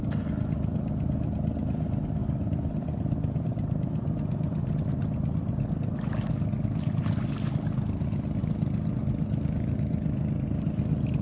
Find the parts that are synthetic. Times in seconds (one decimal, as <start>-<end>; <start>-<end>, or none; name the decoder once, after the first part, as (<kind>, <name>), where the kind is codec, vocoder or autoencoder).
none